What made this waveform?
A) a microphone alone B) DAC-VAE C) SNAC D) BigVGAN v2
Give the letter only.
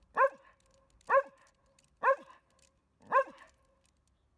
A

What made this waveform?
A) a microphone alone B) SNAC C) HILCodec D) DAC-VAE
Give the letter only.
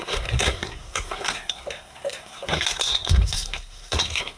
B